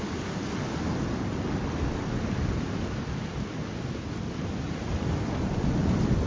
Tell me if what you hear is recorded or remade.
recorded